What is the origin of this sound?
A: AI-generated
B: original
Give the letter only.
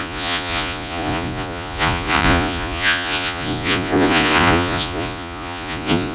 A